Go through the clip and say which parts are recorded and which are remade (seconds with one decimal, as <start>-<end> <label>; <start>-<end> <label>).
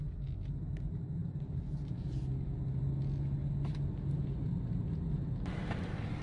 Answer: 0.0-6.2 recorded